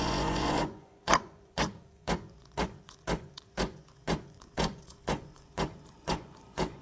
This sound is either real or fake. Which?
fake